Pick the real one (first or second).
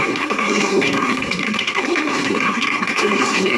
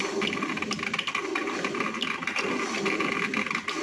second